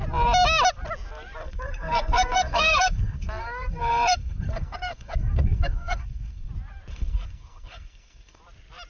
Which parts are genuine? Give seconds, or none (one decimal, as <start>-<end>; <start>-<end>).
0.0-1.4; 6.5-6.9; 8.4-8.9